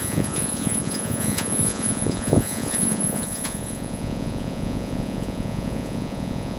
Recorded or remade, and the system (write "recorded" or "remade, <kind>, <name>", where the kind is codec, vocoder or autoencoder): remade, vocoder, Vocos